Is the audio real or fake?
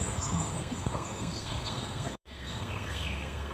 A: fake